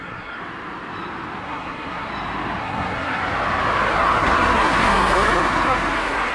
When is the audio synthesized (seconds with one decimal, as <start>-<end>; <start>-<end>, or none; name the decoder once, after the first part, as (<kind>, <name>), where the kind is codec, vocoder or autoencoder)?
0.0-0.4 (codec, SNAC); 1.4-2.1; 2.6-3.2; 3.9-6.3